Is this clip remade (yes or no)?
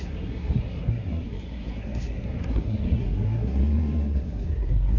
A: yes